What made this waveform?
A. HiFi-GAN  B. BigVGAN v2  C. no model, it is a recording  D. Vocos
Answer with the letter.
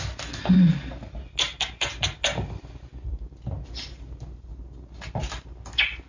C